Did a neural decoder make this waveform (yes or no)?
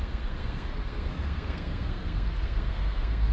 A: yes